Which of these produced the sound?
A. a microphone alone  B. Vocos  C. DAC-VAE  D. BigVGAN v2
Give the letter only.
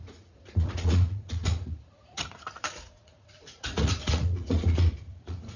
B